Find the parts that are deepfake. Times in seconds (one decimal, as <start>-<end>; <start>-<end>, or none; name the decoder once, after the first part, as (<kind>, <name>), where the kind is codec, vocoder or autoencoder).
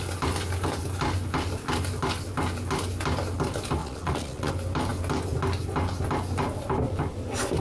3.8-4.5 (vocoder, Vocos)